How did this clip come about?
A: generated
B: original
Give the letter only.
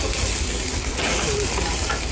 B